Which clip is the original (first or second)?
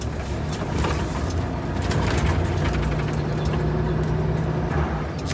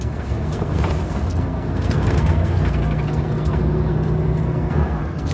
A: first